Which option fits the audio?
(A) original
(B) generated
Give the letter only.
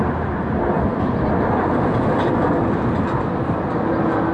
A